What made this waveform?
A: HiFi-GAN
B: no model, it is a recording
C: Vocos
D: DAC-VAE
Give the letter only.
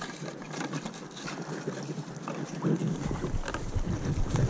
B